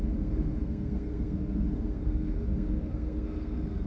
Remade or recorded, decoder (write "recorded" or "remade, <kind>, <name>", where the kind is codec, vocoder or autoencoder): remade, codec, SNAC